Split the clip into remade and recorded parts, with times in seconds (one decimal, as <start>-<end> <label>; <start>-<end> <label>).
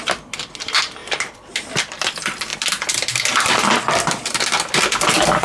0.0-5.4 recorded